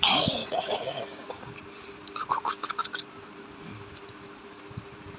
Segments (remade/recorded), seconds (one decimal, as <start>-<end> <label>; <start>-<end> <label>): 0.0-0.4 recorded; 0.4-1.5 remade; 1.5-5.2 recorded